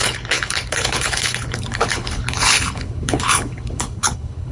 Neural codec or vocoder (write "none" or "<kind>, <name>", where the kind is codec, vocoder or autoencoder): codec, HILCodec